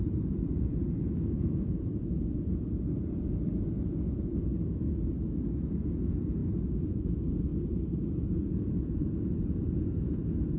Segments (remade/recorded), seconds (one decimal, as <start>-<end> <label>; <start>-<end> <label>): 0.0-4.5 remade; 4.5-6.0 recorded; 6.0-7.5 remade; 7.5-8.2 recorded; 8.2-10.6 remade